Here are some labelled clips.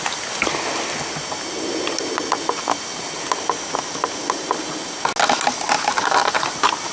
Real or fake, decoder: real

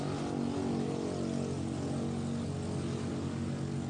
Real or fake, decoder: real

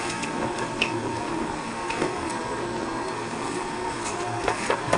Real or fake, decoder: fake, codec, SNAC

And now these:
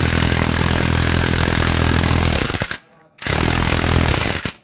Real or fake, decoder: fake, codec, DAC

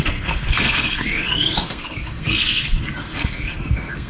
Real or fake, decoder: fake, codec, SNAC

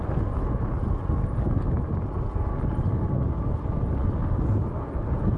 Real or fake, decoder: real